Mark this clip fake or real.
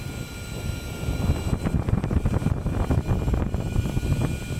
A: real